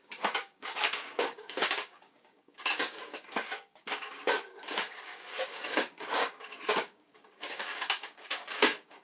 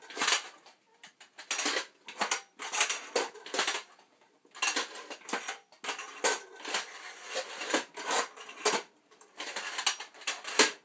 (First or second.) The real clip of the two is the second